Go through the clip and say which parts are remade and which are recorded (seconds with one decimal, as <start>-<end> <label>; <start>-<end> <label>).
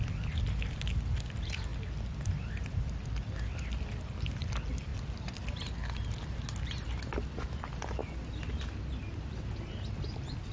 0.0-10.5 recorded